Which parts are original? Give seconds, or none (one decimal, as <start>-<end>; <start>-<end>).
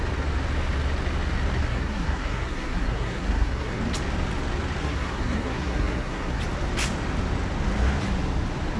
0.0-1.7; 3.8-4.8; 6.4-8.8